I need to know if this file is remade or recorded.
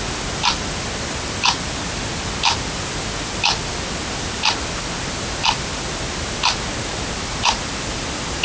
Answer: recorded